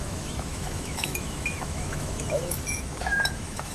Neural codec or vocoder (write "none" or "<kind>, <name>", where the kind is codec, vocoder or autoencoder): autoencoder, DAC-VAE